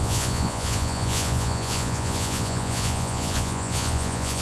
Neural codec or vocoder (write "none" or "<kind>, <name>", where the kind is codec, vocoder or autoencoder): vocoder, Vocos